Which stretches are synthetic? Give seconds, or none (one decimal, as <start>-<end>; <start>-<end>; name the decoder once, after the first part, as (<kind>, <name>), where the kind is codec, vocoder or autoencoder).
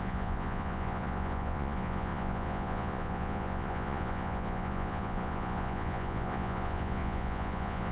0.0-7.9 (vocoder, Vocos)